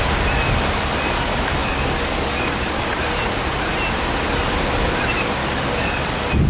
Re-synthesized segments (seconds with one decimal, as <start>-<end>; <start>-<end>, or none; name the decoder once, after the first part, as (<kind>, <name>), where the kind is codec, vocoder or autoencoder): 1.6-3.0 (codec, DAC); 5.4-6.0